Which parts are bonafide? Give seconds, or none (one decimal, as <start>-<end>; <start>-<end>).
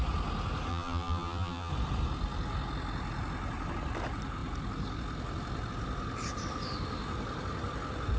0.0-0.7; 1.7-8.2